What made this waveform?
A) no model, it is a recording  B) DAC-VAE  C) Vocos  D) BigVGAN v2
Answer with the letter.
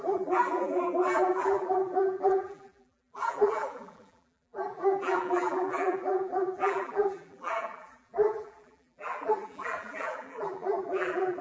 D